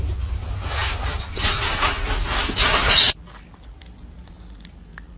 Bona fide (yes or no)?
yes